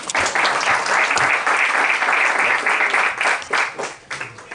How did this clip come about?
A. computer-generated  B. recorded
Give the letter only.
B